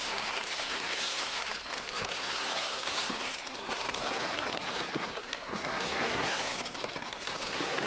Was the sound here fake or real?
fake